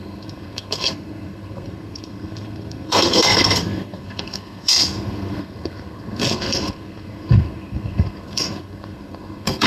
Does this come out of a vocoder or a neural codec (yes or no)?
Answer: yes